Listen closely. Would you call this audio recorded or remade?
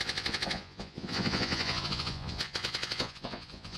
remade